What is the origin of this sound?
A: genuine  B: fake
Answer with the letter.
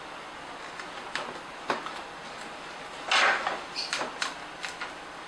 A